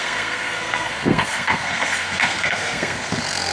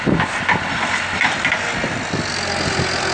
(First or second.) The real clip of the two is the second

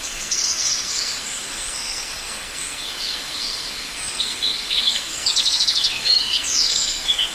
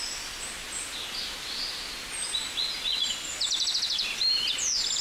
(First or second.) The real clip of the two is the second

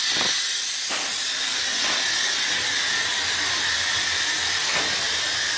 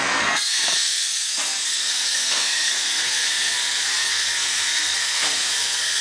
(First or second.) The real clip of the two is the first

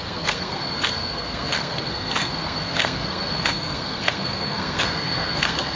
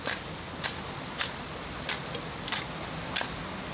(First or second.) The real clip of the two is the second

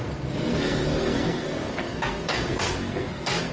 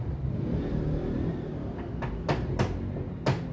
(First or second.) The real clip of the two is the second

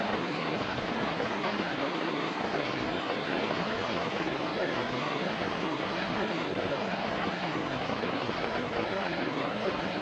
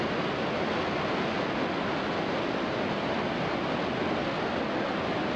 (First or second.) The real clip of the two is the second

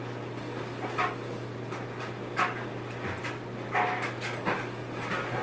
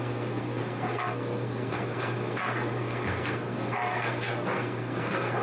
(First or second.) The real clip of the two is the first